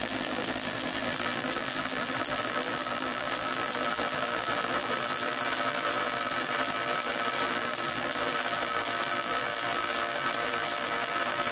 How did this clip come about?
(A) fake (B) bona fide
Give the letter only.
A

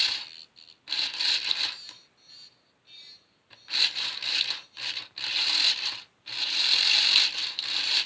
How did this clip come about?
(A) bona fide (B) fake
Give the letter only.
A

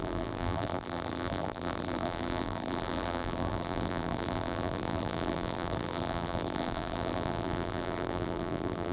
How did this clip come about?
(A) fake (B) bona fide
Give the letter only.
A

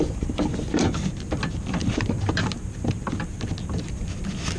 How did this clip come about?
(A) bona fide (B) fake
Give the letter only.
A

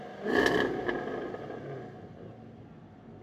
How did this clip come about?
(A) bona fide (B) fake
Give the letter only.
A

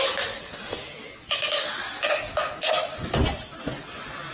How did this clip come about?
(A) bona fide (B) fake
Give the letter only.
A